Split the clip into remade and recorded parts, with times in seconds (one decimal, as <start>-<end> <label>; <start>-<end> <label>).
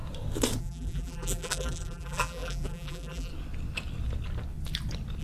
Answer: 0.0-0.6 recorded; 0.6-3.3 remade; 3.3-5.2 recorded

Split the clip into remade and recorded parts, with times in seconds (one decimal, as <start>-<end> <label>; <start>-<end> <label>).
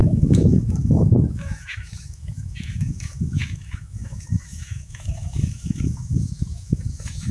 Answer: 0.0-7.3 remade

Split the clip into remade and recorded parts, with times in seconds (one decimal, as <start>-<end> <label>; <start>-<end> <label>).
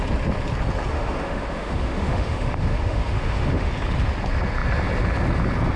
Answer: 0.0-0.9 recorded; 0.9-3.7 remade; 3.7-5.8 recorded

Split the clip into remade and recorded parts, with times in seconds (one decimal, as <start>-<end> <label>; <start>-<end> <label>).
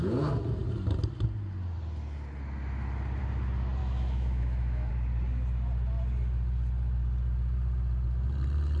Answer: 0.0-3.8 recorded; 3.8-4.9 remade; 4.9-8.8 recorded